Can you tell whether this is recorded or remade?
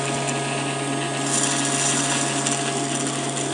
recorded